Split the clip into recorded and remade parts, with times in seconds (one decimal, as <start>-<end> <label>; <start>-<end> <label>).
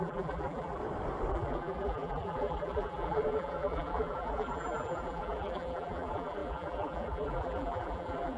0.0-0.8 remade; 0.8-1.3 recorded; 1.3-8.4 remade